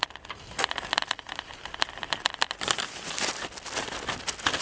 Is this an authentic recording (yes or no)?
yes